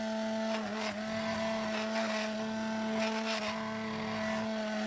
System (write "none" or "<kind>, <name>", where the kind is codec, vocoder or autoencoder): none